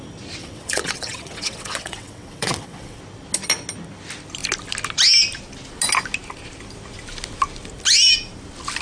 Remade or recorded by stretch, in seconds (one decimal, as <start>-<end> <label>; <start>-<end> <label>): 0.0-0.4 recorded; 0.4-3.0 remade; 3.0-8.8 recorded